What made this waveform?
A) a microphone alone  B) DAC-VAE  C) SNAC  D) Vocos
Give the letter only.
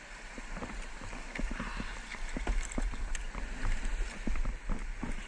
A